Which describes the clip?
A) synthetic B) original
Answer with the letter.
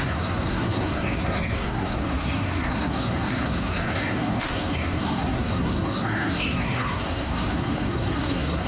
A